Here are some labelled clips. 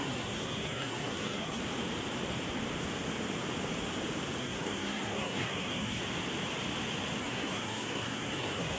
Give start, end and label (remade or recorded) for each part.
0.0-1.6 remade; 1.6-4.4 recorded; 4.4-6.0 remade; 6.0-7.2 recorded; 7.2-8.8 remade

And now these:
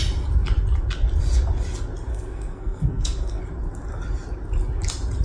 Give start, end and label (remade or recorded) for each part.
0.0-2.1 recorded; 2.1-3.4 remade; 3.4-5.2 recorded

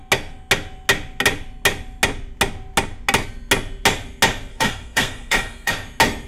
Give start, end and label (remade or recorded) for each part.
0.0-4.5 recorded; 4.5-5.7 remade; 5.7-6.3 recorded

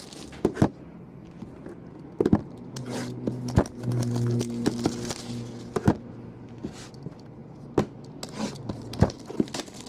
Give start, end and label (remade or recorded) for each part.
0.0-9.9 recorded

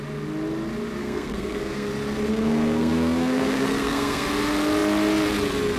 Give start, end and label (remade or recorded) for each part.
0.0-1.0 recorded; 1.0-1.9 remade; 1.9-2.3 recorded; 2.3-4.3 remade; 4.3-5.8 recorded

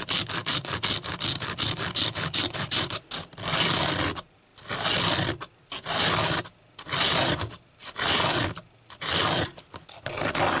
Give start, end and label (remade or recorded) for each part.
0.0-10.6 recorded